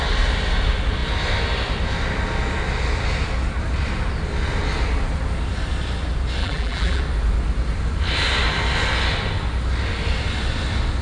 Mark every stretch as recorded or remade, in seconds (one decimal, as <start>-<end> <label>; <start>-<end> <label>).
0.0-6.4 recorded; 6.4-7.0 remade; 7.0-11.0 recorded